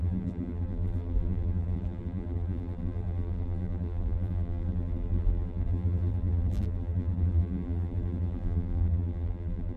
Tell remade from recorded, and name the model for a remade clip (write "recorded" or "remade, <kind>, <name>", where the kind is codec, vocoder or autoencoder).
remade, vocoder, BigVGAN v2